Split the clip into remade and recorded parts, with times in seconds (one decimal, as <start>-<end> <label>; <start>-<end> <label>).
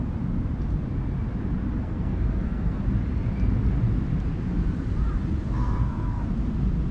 0.0-1.8 recorded; 1.8-2.8 remade; 2.8-5.6 recorded; 5.6-6.2 remade; 6.2-6.9 recorded